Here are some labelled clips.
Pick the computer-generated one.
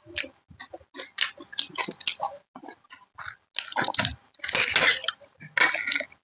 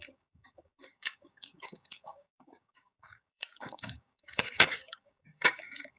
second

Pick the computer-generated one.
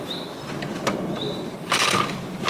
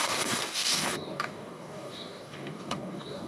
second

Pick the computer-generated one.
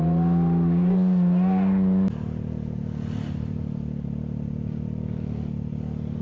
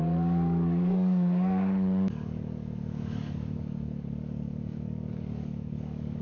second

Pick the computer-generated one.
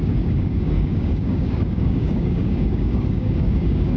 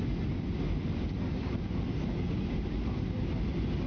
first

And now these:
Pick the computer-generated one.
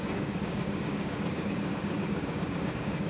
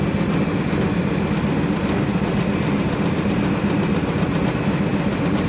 first